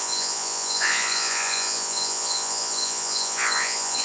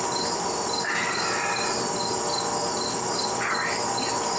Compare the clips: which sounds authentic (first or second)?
second